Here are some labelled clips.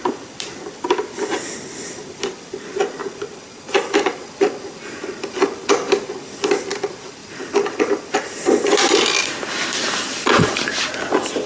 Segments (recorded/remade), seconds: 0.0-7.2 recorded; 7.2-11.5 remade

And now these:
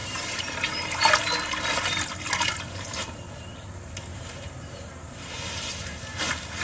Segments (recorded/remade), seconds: 0.0-1.0 remade; 1.0-4.1 recorded; 4.1-5.4 remade; 5.4-6.6 recorded